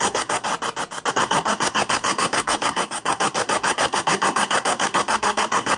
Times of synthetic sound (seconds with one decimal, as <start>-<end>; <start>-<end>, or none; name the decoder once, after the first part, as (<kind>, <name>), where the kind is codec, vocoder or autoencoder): 0.0-0.5 (codec, SNAC); 1.1-5.8